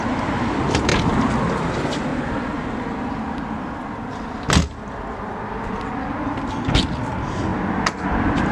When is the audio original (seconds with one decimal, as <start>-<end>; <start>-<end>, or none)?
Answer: 0.9-1.5; 2.1-7.0; 7.5-8.1